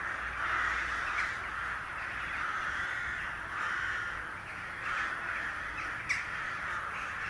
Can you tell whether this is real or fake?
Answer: real